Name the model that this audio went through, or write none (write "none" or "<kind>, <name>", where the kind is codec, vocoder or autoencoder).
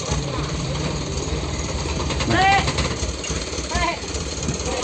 vocoder, BigVGAN v2